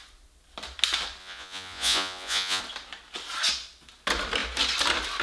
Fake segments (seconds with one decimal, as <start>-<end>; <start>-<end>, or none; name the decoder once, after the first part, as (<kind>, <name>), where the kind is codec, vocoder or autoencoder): 1.2-2.6 (vocoder, Vocos)